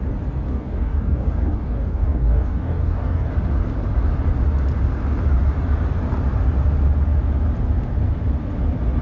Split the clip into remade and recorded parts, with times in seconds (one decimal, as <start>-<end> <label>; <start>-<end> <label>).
0.0-0.5 recorded; 0.5-3.3 remade; 3.3-9.0 recorded